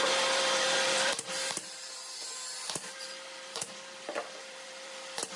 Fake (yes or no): yes